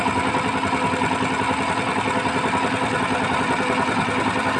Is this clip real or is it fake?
real